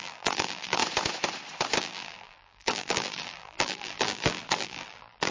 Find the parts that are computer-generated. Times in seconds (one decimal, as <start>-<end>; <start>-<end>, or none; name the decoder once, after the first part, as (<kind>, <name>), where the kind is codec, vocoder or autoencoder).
0.0-0.8 (vocoder, BigVGAN v2); 1.8-5.3